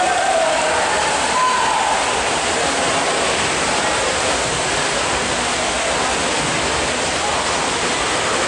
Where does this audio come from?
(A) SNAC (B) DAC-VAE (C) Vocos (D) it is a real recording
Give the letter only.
D